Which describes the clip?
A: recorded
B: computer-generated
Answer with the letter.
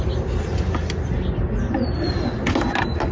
A